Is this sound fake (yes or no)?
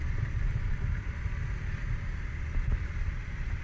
yes